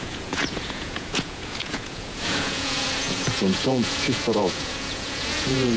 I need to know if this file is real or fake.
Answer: fake